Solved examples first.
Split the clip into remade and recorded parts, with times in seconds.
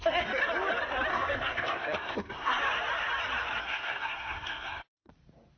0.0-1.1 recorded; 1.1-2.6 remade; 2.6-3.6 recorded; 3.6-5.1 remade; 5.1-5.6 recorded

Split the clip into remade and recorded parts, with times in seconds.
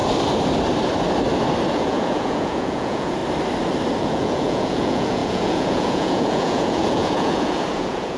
0.0-1.7 recorded; 1.7-3.2 remade; 3.2-4.0 recorded; 4.0-8.2 remade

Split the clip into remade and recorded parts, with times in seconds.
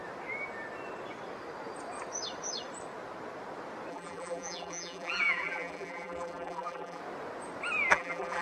0.0-3.9 recorded; 3.9-7.0 remade; 7.0-7.9 recorded; 7.9-8.4 remade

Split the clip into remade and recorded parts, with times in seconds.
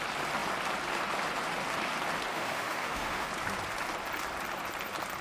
0.0-2.3 recorded; 2.3-3.3 remade; 3.3-5.2 recorded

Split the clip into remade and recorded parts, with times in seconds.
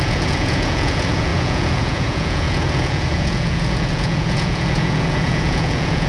0.0-6.1 remade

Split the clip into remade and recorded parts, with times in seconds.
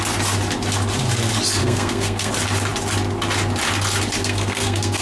0.0-1.6 recorded; 1.6-2.3 remade; 2.3-4.2 recorded; 4.2-5.0 remade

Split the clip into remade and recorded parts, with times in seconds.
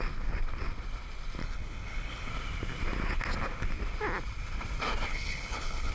0.0-1.4 recorded; 1.4-2.3 remade; 2.3-5.1 recorded; 5.1-5.9 remade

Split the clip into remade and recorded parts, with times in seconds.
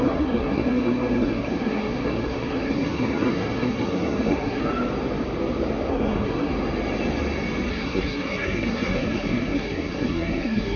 0.0-4.6 remade; 4.6-5.9 recorded; 5.9-6.5 remade; 6.5-7.7 recorded; 7.7-10.8 remade